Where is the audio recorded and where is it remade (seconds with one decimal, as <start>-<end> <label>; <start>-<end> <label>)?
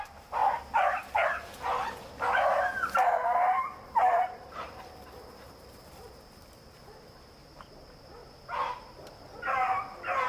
0.0-0.4 remade; 0.4-3.5 recorded; 3.5-8.2 remade; 8.2-9.8 recorded; 9.8-10.3 remade